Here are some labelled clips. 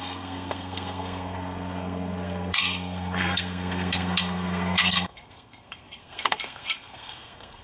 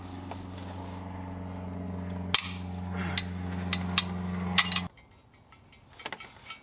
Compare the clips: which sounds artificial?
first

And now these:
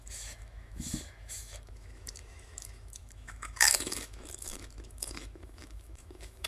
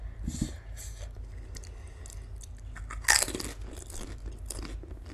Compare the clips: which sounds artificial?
first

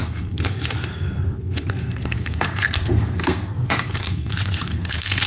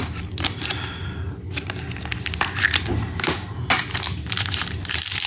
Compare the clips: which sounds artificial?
first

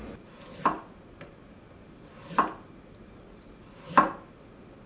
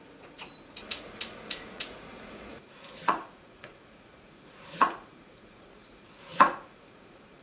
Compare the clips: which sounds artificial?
second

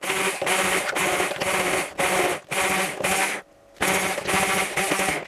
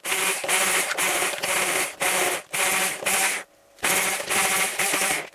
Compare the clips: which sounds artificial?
second